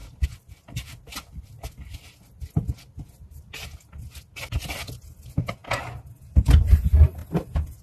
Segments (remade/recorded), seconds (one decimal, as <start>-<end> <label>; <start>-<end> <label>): 0.0-7.8 recorded